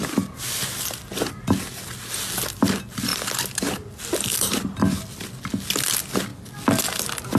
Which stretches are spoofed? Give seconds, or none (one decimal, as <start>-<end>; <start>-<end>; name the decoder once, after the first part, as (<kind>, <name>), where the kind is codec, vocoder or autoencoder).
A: none